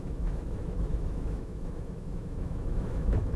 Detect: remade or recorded remade